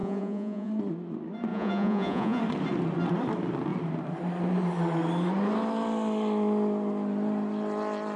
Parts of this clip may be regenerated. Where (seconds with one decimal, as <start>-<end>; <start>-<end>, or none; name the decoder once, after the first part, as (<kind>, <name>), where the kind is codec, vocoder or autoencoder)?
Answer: 0.0-0.7 (vocoder, Vocos); 1.5-2.4